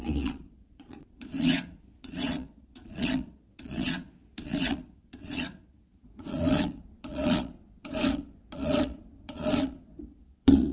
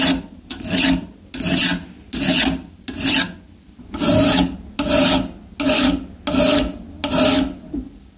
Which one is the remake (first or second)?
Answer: first